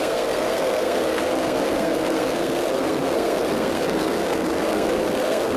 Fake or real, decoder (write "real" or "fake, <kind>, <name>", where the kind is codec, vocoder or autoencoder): fake, codec, SNAC